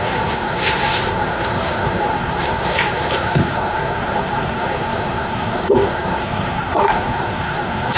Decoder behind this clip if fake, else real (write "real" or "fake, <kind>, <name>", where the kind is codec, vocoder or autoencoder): fake, codec, SNAC